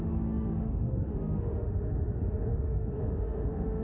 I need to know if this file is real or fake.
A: fake